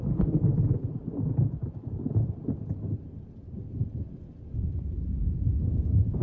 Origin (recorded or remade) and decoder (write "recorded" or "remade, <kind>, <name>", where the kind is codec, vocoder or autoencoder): recorded